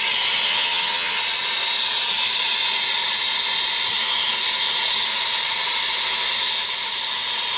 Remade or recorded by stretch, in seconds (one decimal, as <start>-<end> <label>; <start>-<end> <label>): 0.0-0.5 recorded; 0.5-1.2 remade; 1.2-7.6 recorded